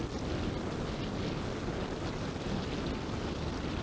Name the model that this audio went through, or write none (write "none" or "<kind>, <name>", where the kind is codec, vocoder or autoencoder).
none